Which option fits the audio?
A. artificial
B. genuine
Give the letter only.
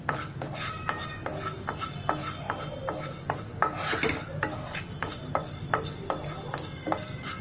B